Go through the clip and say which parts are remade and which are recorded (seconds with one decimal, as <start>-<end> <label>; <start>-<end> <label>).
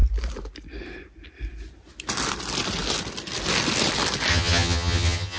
0.0-4.3 recorded; 4.3-5.4 remade